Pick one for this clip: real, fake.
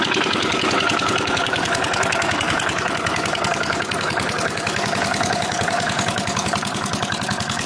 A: fake